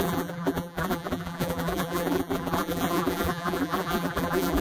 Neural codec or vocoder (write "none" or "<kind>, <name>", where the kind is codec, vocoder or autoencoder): vocoder, BigVGAN v2